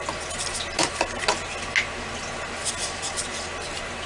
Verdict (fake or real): real